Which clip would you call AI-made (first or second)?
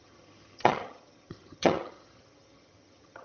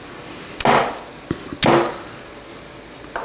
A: first